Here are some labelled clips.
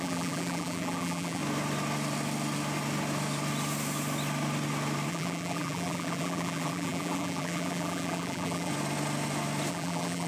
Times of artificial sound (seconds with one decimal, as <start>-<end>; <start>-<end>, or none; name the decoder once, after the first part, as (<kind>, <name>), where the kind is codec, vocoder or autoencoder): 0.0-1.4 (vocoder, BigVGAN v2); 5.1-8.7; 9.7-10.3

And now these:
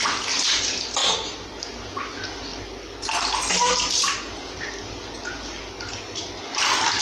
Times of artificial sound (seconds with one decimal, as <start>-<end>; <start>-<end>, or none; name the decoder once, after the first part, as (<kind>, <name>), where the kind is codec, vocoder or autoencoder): none

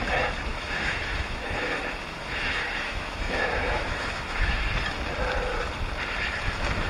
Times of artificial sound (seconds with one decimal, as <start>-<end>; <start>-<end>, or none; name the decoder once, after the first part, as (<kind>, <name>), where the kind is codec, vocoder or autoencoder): 0.5-4.6 (autoencoder, DAC-VAE)

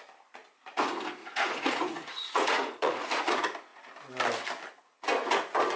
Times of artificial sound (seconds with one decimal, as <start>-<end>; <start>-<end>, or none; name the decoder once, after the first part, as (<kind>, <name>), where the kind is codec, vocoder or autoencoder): 1.2-3.3 (vocoder, Vocos)